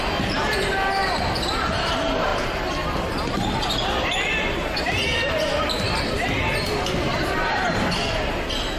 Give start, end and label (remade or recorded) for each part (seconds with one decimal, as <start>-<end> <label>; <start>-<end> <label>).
0.0-7.1 recorded; 7.1-8.1 remade; 8.1-8.8 recorded